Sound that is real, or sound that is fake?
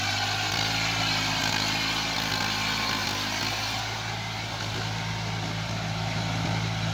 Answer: real